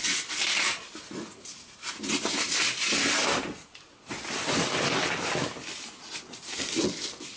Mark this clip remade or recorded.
recorded